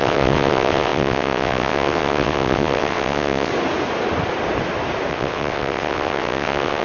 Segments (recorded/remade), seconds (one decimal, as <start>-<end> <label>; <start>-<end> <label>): 0.0-3.5 remade; 3.5-5.1 recorded; 5.1-6.8 remade